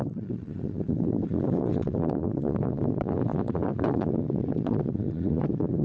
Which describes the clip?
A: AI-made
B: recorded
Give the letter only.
A